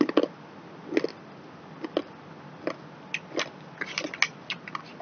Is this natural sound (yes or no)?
yes